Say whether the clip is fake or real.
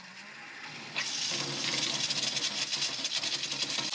real